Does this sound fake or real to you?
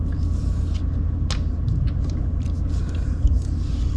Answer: real